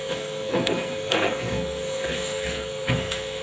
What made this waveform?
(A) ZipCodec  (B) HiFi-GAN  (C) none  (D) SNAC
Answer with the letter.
D